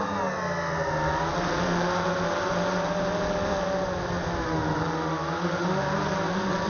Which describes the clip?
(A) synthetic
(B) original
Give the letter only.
B